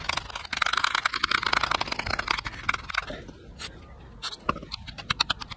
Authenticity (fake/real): real